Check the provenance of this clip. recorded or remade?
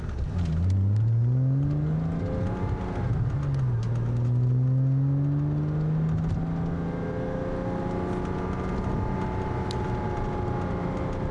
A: recorded